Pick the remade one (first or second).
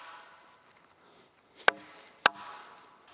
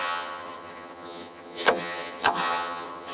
second